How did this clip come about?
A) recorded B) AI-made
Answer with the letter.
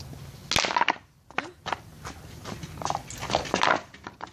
A